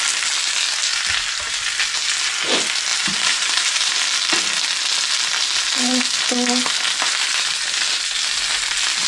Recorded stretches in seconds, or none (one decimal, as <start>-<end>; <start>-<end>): 0.0-2.9; 4.0-9.1